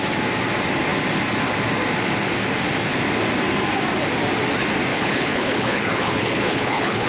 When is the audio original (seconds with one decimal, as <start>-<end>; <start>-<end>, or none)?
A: 0.0-4.9

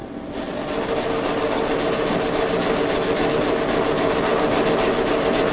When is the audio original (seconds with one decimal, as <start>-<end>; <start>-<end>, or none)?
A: 0.0-5.5

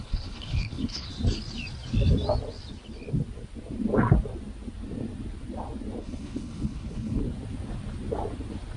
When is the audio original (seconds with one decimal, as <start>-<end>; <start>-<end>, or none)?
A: 1.1-6.0; 7.2-8.8

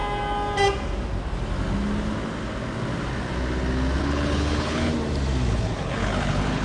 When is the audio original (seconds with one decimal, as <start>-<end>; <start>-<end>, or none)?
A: 0.0-4.0; 4.9-5.5